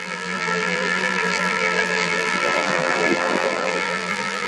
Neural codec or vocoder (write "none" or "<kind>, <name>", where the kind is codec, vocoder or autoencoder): vocoder, BigVGAN v2